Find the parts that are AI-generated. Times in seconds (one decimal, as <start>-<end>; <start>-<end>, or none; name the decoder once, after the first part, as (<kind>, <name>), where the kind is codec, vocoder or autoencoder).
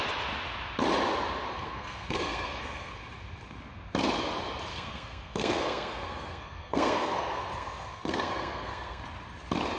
1.5-3.0 (codec, SNAC); 4.7-9.0